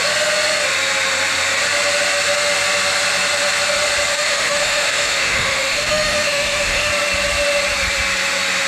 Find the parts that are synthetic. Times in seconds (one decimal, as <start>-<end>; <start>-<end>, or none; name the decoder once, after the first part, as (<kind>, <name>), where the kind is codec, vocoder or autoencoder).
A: 4.1-6.9 (autoencoder, DAC-VAE)